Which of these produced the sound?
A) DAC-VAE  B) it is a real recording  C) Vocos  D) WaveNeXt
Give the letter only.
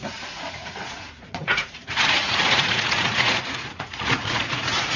C